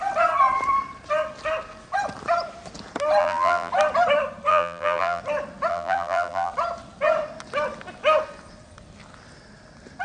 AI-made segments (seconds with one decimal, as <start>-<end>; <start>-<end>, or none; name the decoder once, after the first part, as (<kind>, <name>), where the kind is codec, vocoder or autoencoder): 3.2-3.7 (vocoder, BigVGAN v2); 4.5-5.2; 5.7-6.5